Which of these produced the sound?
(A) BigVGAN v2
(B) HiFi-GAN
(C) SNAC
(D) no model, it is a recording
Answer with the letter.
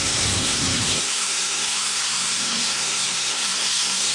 C